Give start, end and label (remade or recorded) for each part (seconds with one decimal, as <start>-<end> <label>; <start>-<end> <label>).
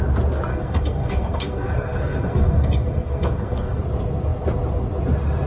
0.0-0.5 recorded; 0.5-3.8 remade; 3.8-5.5 recorded